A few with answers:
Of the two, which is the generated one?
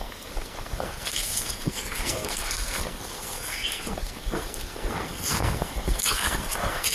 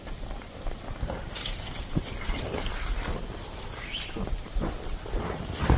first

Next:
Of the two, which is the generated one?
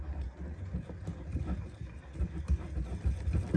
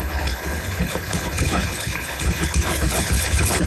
second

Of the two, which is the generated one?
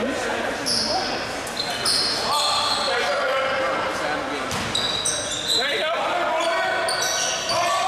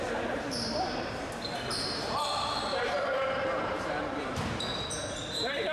second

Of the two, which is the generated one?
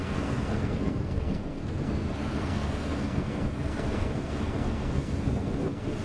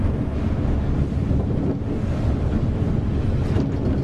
first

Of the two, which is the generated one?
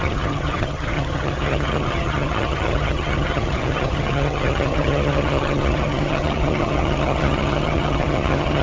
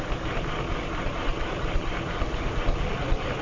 first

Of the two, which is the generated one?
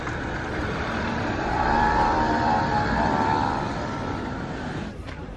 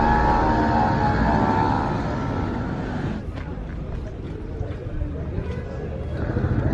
first